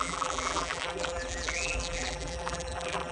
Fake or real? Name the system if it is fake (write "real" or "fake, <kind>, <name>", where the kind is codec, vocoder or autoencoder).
fake, vocoder, BigVGAN v2